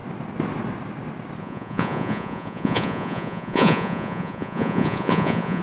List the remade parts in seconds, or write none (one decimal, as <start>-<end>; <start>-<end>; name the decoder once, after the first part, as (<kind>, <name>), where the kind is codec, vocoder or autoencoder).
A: 1.4-5.6 (vocoder, Vocos)